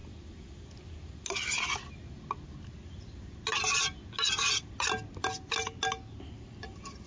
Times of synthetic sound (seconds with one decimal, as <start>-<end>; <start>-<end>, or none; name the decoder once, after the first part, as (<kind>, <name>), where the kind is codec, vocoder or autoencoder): none